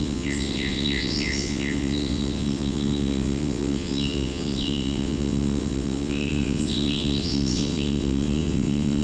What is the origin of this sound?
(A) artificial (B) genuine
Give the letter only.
A